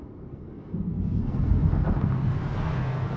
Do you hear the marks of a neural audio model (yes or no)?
yes